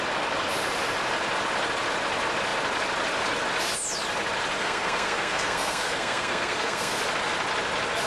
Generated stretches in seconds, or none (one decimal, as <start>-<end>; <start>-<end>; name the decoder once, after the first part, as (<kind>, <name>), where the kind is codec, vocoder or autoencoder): 4.6-7.0 (codec, SNAC)